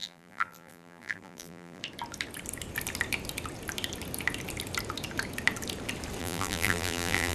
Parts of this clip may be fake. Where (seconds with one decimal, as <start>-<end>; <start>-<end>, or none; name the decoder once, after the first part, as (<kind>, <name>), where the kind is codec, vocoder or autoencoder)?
0.0-1.8 (vocoder, BigVGAN v2); 6.2-7.3